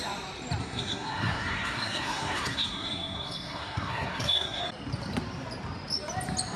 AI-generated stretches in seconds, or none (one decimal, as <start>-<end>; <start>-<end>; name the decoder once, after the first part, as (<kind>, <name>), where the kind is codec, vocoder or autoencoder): 0.6-4.6 (codec, SNAC)